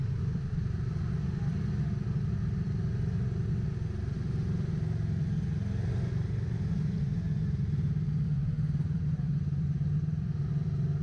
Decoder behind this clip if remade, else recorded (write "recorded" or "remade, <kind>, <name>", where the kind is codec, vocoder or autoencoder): recorded